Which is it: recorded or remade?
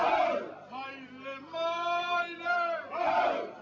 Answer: recorded